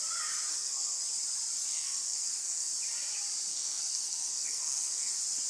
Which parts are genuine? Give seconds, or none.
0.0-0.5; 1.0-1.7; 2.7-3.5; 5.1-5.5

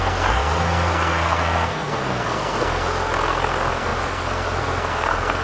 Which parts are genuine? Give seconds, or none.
none